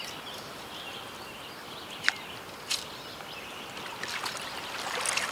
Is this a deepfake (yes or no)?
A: no